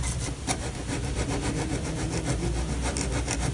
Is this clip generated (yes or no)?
no